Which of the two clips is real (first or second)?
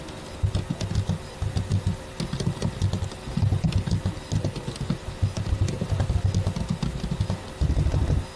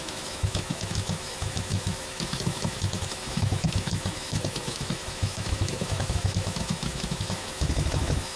first